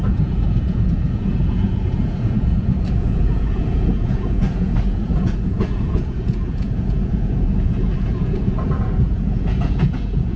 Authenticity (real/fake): fake